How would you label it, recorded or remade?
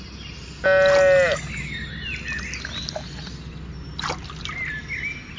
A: recorded